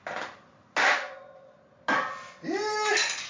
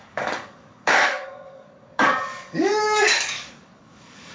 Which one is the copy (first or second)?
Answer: second